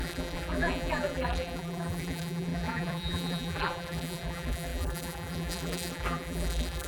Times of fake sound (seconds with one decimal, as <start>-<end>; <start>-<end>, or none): 0.0-6.9